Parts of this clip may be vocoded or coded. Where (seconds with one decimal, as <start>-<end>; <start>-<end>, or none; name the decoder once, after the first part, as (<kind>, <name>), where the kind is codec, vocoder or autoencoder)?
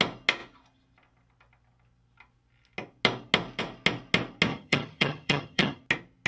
4.5-5.8 (vocoder, HiFi-GAN)